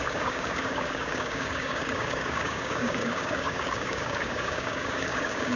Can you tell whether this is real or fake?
fake